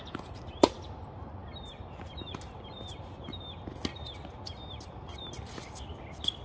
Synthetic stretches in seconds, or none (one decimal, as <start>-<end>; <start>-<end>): none